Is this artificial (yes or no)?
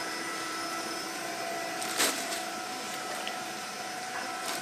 yes